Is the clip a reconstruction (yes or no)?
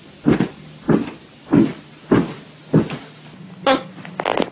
no